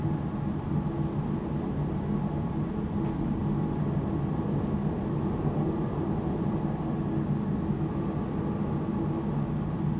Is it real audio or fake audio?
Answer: real